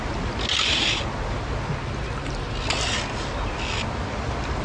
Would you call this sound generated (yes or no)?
no